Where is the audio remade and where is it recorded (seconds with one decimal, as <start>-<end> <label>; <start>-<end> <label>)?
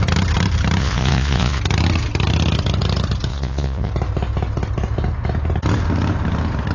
0.0-0.8 recorded; 0.8-1.6 remade; 1.6-3.3 recorded; 3.3-3.9 remade; 3.9-6.7 recorded